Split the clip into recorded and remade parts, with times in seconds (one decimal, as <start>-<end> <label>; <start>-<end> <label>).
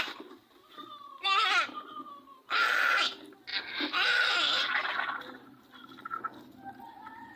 0.0-0.4 recorded; 0.4-2.8 remade; 2.8-7.4 recorded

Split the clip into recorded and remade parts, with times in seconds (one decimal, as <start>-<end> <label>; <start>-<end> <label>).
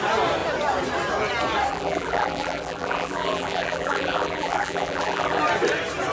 0.0-1.7 recorded; 1.7-5.4 remade; 5.4-6.1 recorded